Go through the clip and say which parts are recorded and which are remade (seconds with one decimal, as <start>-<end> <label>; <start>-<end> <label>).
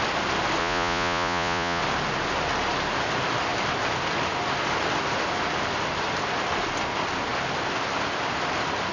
0.0-0.6 recorded; 0.6-1.8 remade; 1.8-8.9 recorded